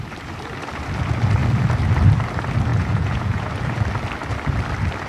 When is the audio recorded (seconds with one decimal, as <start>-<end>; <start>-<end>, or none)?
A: 0.0-2.7; 3.5-5.1